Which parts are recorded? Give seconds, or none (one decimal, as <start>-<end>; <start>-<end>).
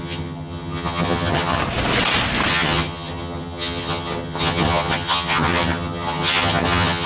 1.6-2.5